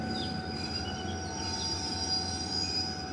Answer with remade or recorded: recorded